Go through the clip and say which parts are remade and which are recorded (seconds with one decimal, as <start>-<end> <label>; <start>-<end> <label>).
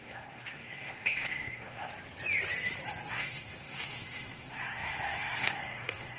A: 0.0-1.9 remade; 1.9-3.1 recorded; 3.1-6.2 remade